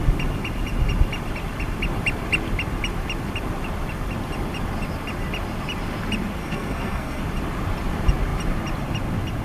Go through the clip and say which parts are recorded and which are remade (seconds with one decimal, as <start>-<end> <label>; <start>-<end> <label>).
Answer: 0.0-6.4 recorded; 6.4-7.2 remade; 7.2-9.4 recorded